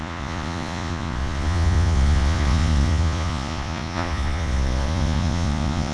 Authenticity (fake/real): fake